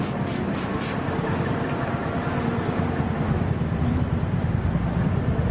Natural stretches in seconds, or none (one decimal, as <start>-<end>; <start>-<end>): 2.0-3.5